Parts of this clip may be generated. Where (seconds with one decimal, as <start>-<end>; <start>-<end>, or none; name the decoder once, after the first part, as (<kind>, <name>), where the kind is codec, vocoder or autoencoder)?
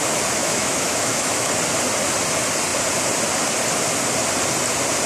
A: 0.4-1.5 (autoencoder, DAC-VAE)